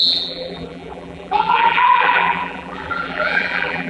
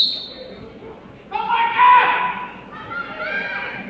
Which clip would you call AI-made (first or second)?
first